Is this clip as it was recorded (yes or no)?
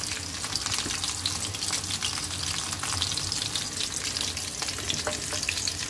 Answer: yes